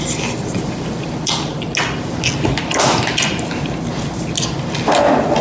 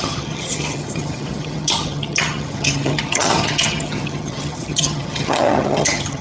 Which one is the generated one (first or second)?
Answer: second